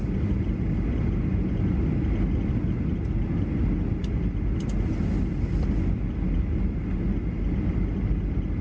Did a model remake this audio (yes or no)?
no